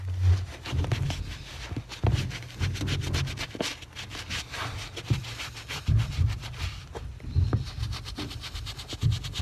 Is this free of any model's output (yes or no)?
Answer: yes